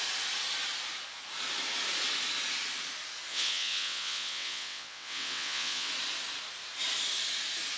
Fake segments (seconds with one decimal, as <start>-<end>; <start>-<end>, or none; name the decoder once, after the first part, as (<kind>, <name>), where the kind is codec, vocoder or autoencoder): 3.3-5.9 (vocoder, WaveNeXt)

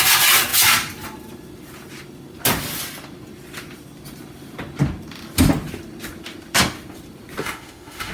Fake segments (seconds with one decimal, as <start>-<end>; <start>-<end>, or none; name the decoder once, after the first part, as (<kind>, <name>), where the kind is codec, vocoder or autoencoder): 7.4-8.1 (autoencoder, DAC-VAE)

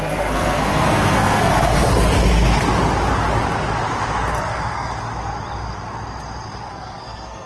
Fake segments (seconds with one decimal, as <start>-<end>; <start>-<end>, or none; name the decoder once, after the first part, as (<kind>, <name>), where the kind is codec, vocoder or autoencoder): 0.0-1.5 (codec, SNAC); 4.4-4.9; 6.7-7.5

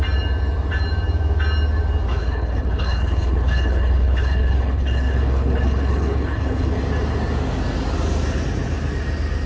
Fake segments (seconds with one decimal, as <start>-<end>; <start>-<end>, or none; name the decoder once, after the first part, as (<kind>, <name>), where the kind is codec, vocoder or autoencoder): 2.1-6.8 (codec, HILCodec)

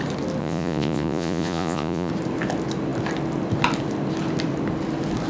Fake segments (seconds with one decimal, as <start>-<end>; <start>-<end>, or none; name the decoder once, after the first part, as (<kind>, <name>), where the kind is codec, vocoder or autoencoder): 0.4-2.1 (vocoder, Vocos)

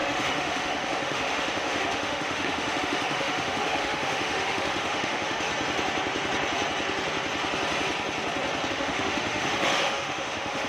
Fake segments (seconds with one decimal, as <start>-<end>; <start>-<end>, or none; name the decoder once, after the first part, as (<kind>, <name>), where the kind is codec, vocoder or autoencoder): 0.0-5.5 (autoencoder, DAC-VAE); 8.7-10.7

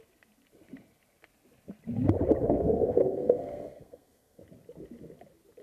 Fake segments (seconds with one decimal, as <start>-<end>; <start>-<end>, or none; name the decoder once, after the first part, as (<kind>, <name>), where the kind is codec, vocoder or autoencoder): 2.4-4.4 (codec, SNAC)